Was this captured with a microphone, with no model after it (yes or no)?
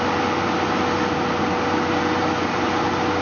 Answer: yes